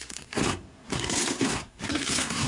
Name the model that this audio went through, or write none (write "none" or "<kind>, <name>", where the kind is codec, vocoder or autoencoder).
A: codec, SNAC